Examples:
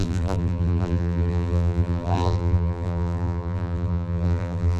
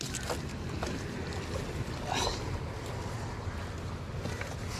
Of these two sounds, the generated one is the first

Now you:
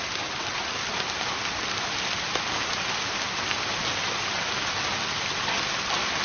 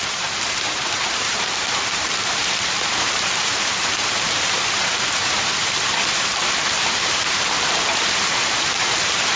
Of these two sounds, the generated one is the second